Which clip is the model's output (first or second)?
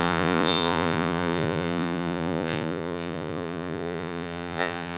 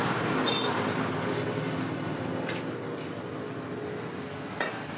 first